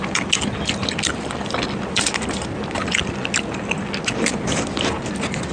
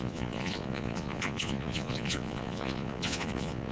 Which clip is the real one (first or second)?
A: first